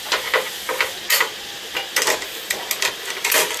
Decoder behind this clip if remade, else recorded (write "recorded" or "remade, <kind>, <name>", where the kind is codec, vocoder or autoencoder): recorded